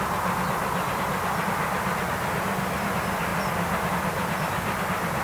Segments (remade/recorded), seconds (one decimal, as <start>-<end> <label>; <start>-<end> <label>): 0.0-5.2 recorded